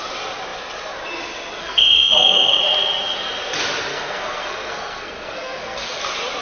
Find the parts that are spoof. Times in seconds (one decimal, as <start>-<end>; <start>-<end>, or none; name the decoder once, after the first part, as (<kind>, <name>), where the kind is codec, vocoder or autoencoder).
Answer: 1.6-2.6 (codec, SNAC); 3.9-6.0